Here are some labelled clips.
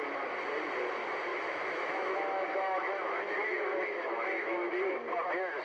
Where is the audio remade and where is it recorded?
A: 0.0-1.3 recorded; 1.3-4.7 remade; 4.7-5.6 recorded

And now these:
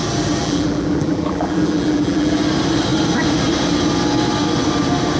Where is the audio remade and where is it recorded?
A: 0.0-0.4 recorded; 0.4-2.4 remade; 2.4-5.2 recorded

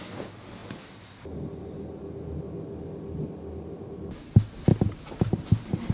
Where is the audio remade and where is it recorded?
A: 0.0-4.7 recorded; 4.7-5.9 remade

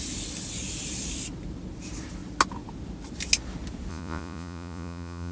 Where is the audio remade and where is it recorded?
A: 0.0-3.9 recorded; 3.9-5.3 remade

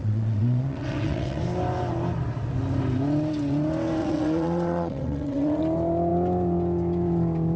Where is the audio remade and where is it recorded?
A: 0.0-1.4 remade; 1.4-4.0 recorded; 4.0-5.6 remade; 5.6-7.6 recorded

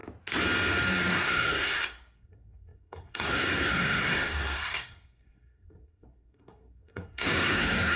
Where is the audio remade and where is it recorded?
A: 0.0-1.1 recorded; 1.1-8.0 remade